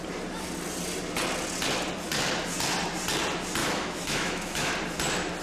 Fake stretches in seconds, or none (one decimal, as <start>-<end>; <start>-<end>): 3.6-4.7